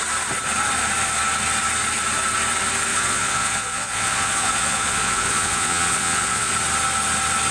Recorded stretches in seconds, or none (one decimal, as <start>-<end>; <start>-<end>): 0.0-2.9; 6.5-7.5